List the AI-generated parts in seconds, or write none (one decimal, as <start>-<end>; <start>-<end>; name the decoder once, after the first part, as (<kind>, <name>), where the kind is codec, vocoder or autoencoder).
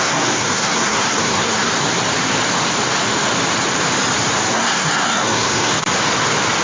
0.0-1.7 (codec, SNAC); 4.5-5.7